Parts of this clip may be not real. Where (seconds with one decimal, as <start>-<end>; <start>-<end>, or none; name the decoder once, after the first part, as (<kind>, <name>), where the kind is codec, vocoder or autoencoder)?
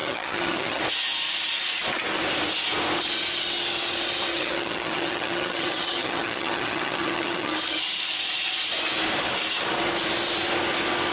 0.0-0.8 (vocoder, HiFi-GAN); 4.3-7.8